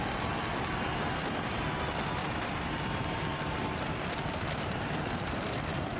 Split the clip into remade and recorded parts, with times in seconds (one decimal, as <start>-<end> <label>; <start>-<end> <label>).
0.0-2.2 recorded; 2.2-6.0 remade